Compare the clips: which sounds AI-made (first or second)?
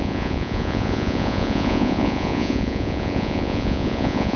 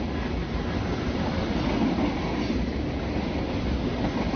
first